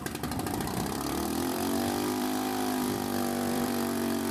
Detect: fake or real fake